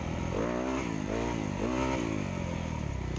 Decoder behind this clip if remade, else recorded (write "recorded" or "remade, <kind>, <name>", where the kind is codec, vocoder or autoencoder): recorded